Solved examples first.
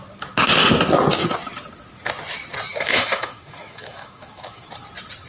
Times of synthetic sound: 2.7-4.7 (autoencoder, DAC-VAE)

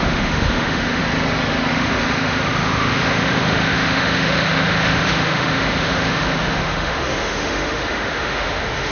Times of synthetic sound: 0.0-1.0 (autoencoder, DAC-VAE); 1.7-8.9